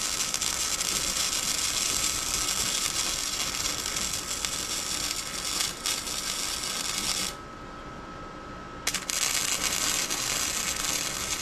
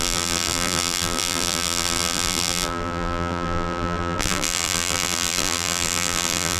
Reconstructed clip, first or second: second